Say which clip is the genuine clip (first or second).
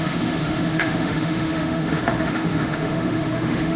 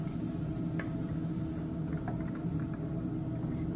second